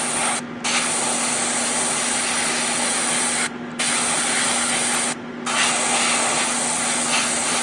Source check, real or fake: real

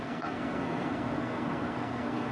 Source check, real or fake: fake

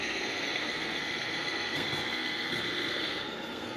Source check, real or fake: fake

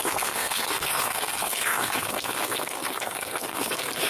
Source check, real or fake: fake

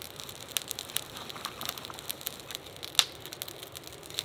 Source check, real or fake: real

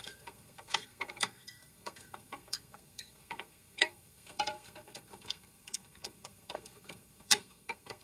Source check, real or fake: fake